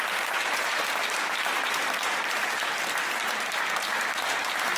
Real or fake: fake